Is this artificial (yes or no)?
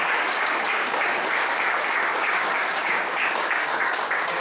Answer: yes